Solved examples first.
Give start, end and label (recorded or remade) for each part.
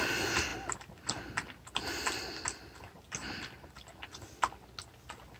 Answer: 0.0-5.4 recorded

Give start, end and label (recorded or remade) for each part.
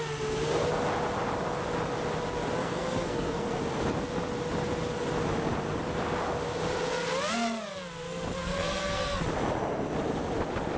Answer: 0.0-2.6 recorded; 2.6-3.6 remade; 3.6-8.5 recorded; 8.5-9.2 remade; 9.2-10.8 recorded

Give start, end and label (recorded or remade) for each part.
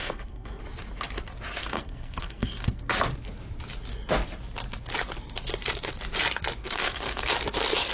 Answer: 0.0-0.6 remade; 0.6-1.6 recorded; 1.6-2.9 remade; 2.9-6.6 recorded; 6.6-7.3 remade; 7.3-7.9 recorded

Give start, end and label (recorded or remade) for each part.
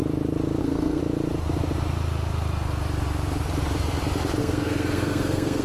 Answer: 0.0-0.6 recorded; 0.6-1.0 remade; 1.0-4.4 recorded; 4.4-5.6 remade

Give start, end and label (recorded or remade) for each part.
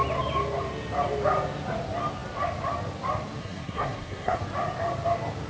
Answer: 0.0-3.4 recorded; 3.4-4.4 remade; 4.4-5.5 recorded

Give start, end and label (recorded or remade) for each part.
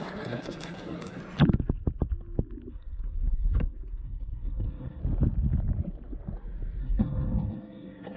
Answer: 0.0-1.2 remade; 1.2-2.7 recorded; 2.7-5.0 remade; 5.0-6.8 recorded; 6.8-8.2 remade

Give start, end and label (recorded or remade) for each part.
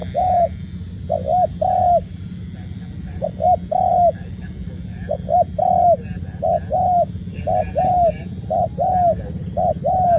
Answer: 0.0-10.2 recorded